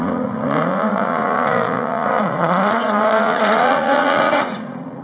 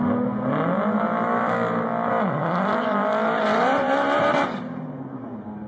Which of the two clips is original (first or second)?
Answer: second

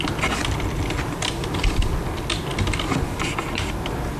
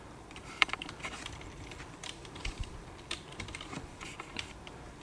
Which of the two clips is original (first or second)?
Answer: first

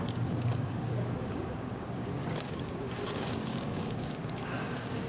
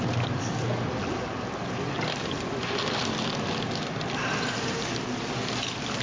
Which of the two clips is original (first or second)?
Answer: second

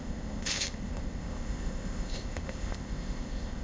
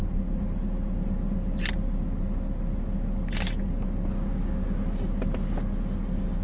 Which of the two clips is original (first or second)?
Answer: second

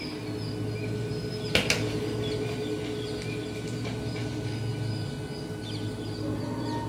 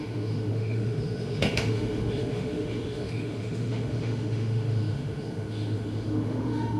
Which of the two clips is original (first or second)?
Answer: first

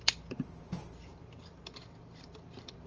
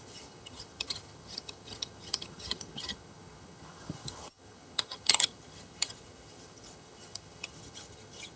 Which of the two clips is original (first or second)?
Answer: first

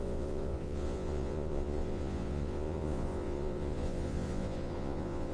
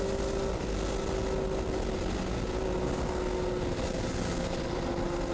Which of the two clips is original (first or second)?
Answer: second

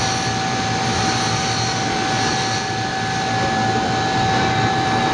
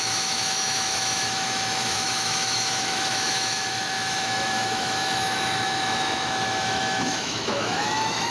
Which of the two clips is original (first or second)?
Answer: first